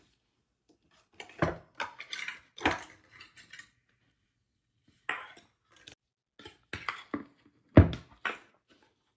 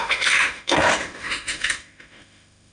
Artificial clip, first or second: second